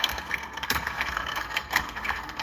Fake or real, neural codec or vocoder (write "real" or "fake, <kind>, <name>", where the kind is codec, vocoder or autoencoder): fake, codec, SNAC